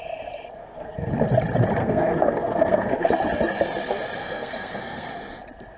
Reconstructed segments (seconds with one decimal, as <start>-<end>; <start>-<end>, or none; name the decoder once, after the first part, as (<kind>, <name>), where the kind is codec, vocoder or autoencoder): 0.6-1.1 (codec, SNAC); 1.8-3.1; 4.2-5.1